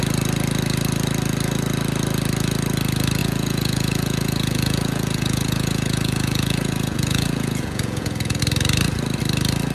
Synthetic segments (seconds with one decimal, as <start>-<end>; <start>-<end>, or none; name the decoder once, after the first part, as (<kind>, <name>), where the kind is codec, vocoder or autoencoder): 3.2-8.4 (vocoder, Vocos)